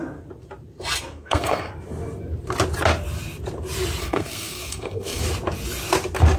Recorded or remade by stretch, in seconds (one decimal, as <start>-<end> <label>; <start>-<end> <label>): 0.0-1.1 recorded; 1.1-1.7 remade; 1.7-4.0 recorded; 4.0-5.2 remade; 5.2-6.4 recorded